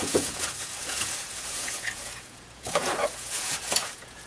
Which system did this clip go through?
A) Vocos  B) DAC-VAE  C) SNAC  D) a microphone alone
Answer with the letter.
A